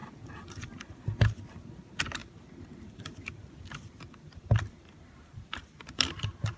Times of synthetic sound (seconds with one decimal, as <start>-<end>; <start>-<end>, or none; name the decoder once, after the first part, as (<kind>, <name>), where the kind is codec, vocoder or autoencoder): 2.2-6.6 (vocoder, BigVGAN v2)